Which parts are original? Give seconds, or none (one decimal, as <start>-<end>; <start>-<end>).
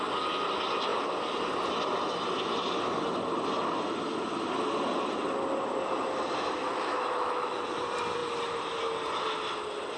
0.0-6.6; 7.6-10.0